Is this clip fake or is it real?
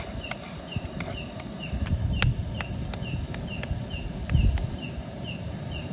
real